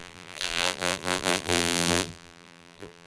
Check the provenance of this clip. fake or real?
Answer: fake